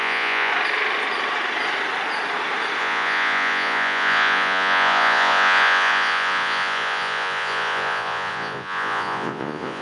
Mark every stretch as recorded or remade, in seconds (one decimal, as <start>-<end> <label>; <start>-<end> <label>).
0.0-0.5 remade; 0.5-2.8 recorded; 2.8-9.8 remade